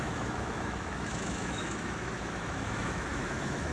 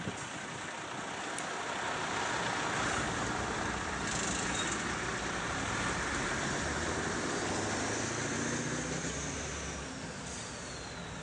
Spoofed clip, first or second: first